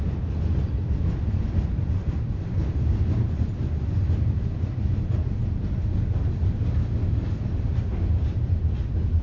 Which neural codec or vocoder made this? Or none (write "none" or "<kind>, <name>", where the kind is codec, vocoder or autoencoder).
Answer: none